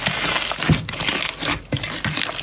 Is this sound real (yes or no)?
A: yes